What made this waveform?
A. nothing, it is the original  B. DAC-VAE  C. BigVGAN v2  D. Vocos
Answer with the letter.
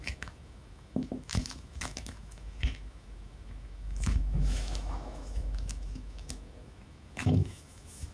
B